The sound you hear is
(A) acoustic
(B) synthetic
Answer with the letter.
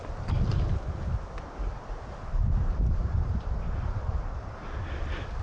A